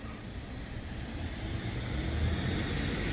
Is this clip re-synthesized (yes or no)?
no